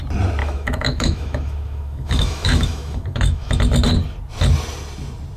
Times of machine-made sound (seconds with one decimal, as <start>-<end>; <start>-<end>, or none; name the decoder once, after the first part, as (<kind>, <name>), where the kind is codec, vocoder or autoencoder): 0.4-3.6 (autoencoder, DAC-VAE)

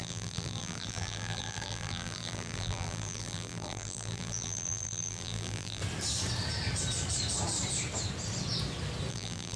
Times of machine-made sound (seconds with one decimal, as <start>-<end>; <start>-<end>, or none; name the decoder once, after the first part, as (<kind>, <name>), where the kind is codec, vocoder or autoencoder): 0.0-5.8 (vocoder, BigVGAN v2); 9.1-9.6

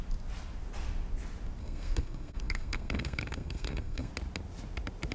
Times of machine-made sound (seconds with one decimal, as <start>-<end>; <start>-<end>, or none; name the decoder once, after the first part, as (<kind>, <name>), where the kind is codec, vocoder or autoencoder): 1.6-4.1 (codec, SNAC)

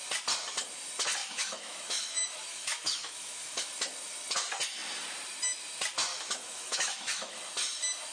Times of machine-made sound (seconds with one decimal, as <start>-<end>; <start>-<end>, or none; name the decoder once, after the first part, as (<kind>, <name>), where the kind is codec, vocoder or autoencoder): 1.2-3.7 (autoencoder, DAC-VAE); 6.1-7.4

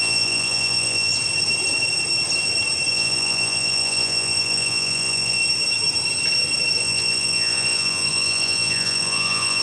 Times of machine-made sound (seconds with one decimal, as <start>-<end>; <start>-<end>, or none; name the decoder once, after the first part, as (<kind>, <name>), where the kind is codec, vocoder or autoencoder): 0.0-1.1 (vocoder, Vocos); 2.9-5.4; 6.8-9.6